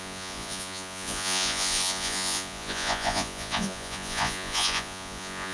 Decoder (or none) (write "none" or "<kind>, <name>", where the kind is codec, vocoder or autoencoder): vocoder, Vocos